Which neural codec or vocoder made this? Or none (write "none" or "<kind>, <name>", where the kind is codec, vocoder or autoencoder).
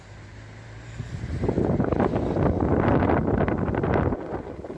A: none